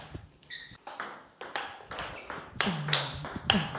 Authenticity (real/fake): real